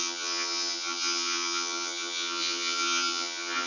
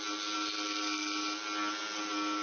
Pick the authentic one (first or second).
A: second